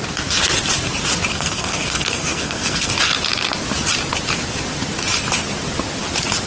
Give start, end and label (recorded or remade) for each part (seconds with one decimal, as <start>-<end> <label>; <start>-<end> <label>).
0.0-1.3 recorded; 1.3-2.9 remade; 2.9-6.5 recorded